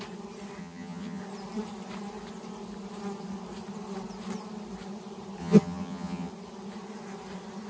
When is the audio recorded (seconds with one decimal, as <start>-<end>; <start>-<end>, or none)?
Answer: 0.0-0.6; 1.2-5.4; 6.3-7.7